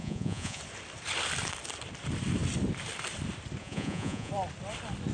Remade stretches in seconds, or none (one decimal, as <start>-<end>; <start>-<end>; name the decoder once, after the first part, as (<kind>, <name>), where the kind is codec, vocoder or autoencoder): 0.0-0.6 (vocoder, Vocos); 3.6-4.3